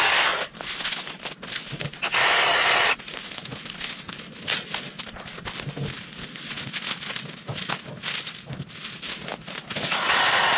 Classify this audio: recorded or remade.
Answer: recorded